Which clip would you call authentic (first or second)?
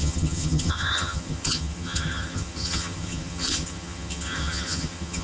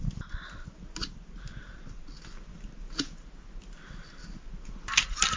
second